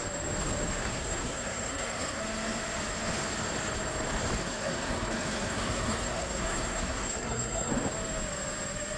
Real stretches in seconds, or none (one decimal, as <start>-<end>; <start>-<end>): 0.0-0.8; 2.2-4.4; 7.7-9.0